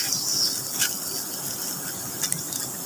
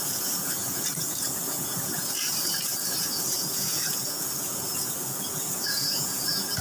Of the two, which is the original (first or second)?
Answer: first